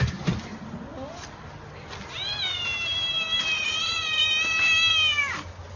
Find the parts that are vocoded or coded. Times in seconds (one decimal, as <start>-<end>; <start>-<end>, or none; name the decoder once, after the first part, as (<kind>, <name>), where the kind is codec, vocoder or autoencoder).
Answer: none

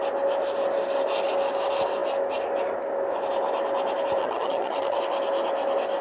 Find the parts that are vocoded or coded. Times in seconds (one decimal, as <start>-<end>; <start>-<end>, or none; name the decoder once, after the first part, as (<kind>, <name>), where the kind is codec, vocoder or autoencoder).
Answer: 4.2-5.0 (vocoder, HiFi-GAN)

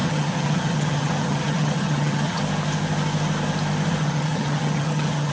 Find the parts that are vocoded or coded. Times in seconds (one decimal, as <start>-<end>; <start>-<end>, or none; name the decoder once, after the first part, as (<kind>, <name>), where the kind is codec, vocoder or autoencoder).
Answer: 0.0-2.4 (vocoder, HiFi-GAN); 4.0-5.3

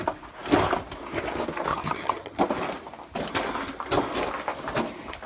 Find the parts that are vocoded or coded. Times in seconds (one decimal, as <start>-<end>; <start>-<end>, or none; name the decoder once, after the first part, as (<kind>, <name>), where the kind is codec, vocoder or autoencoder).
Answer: 1.7-2.4 (vocoder, HiFi-GAN)